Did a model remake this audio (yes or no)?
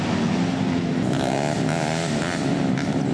no